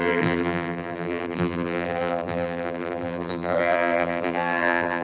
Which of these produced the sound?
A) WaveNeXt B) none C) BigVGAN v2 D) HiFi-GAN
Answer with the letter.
C